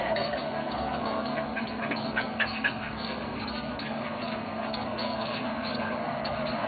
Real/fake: fake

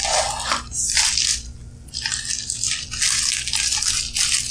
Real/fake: real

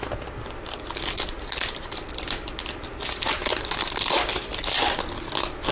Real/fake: real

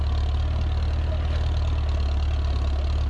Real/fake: real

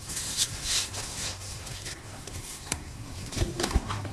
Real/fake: fake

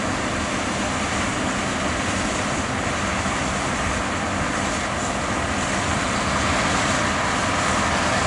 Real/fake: real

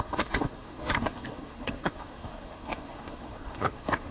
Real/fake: fake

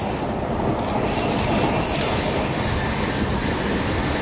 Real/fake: real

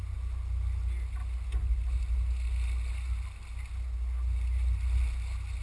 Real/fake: real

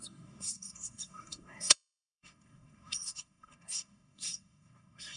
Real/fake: fake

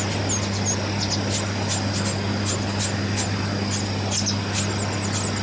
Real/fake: real